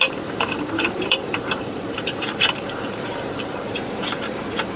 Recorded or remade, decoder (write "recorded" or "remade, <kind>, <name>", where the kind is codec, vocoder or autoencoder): remade, vocoder, BigVGAN v2